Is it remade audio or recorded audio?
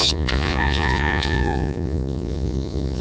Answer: remade